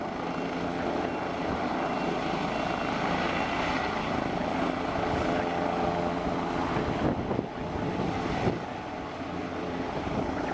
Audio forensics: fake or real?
real